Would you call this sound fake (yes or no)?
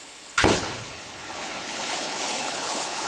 yes